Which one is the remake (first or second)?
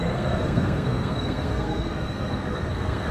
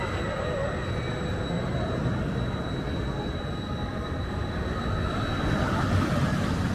first